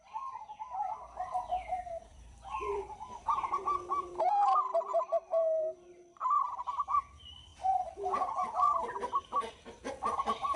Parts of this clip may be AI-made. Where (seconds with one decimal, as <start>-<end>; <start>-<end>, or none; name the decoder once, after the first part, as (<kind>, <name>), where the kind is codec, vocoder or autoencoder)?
0.0-10.6 (vocoder, BigVGAN v2)